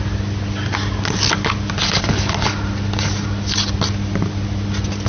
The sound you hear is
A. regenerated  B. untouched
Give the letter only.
B